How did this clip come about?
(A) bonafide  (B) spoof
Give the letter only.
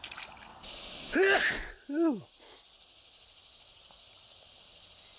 A